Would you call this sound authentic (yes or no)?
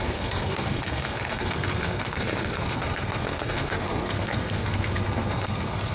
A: no